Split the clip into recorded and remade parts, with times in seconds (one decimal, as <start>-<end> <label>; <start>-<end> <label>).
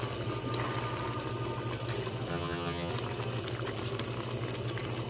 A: 0.0-2.3 recorded; 2.3-2.9 remade; 2.9-5.1 recorded